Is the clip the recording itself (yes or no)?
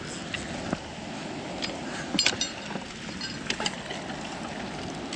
yes